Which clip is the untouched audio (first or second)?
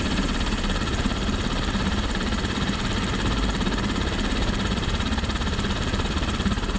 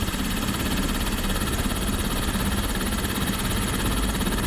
second